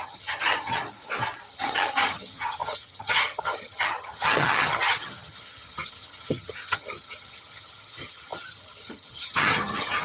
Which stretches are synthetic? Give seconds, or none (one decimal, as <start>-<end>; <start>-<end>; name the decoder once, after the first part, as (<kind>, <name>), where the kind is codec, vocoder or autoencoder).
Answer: 0.0-0.8 (vocoder, HiFi-GAN); 1.5-10.0